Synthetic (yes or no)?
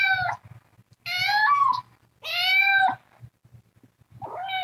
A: no